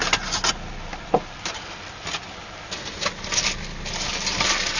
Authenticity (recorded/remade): recorded